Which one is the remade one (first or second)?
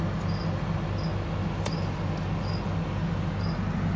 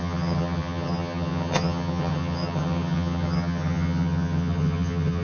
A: second